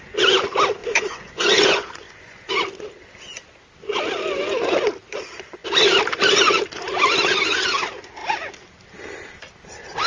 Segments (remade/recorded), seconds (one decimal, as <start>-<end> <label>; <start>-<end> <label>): 0.0-0.8 recorded; 0.8-2.5 remade; 2.5-10.1 recorded